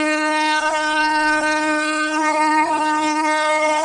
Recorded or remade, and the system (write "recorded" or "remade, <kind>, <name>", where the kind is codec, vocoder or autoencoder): remade, codec, SNAC